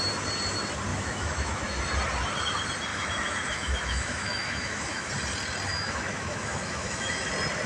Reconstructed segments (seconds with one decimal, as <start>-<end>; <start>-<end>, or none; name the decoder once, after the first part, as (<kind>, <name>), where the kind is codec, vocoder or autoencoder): 0.9-1.8 (autoencoder, DAC-VAE); 2.9-5.1; 5.7-7.3

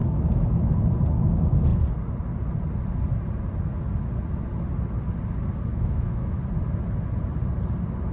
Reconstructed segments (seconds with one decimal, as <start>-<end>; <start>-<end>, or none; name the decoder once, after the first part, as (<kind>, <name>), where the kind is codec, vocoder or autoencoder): 0.0-0.7 (autoencoder, DAC-VAE); 5.7-6.4

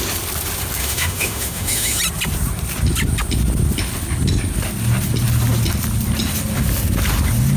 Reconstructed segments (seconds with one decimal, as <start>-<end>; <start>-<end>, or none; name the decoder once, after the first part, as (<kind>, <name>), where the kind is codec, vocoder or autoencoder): 0.8-2.0 (autoencoder, DAC-VAE)

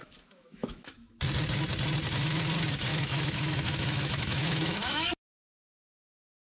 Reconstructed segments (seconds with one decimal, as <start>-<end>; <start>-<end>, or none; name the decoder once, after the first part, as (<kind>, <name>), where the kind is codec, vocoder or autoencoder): 0.0-1.1 (autoencoder, DAC-VAE); 2.9-5.2

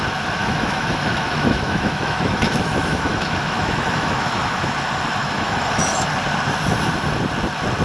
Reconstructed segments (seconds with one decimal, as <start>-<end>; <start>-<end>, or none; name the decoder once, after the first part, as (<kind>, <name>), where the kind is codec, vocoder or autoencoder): 0.4-4.6 (autoencoder, DAC-VAE); 5.2-6.1